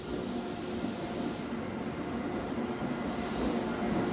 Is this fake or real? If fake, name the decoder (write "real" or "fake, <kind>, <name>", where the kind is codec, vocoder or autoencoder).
real